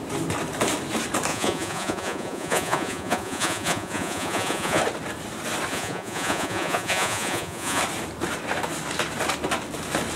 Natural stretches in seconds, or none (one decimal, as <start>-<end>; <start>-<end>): 0.0-1.3; 4.8-5.7; 7.8-10.2